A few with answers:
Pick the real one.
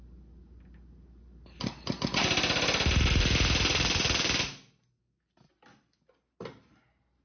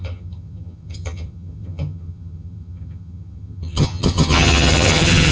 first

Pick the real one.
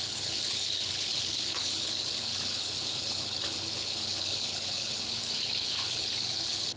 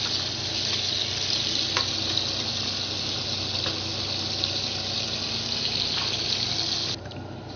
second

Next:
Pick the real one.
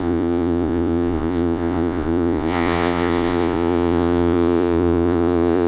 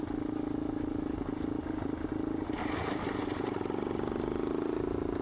second